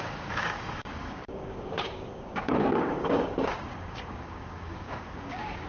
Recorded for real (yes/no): no